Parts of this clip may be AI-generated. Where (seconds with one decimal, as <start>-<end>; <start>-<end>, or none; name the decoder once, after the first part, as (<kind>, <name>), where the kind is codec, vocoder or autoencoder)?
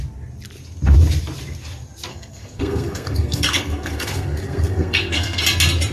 2.1-5.4 (codec, SNAC)